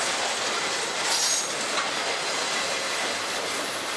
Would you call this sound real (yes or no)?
yes